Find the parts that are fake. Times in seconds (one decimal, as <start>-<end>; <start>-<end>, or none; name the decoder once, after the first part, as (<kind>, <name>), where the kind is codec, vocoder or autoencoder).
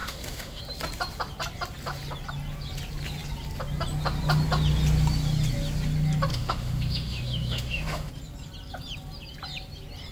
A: 0.0-0.6 (autoencoder, DAC-VAE); 6.3-8.1